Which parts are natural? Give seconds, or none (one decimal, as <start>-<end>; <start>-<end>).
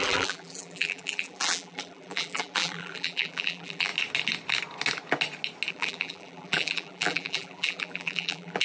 3.9-5.7